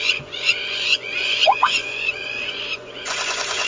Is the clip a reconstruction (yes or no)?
yes